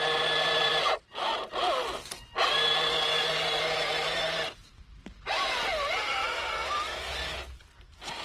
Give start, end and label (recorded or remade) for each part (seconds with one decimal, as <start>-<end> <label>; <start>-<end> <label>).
0.0-0.7 remade; 0.7-3.2 recorded; 3.2-5.7 remade; 5.7-7.6 recorded; 7.6-8.2 remade